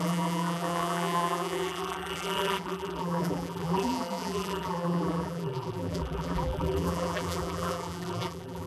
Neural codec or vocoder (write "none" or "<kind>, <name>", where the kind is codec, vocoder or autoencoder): vocoder, BigVGAN v2